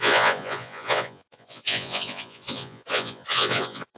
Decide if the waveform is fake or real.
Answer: fake